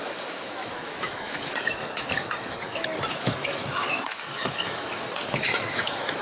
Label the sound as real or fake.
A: fake